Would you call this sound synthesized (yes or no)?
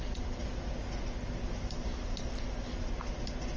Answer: no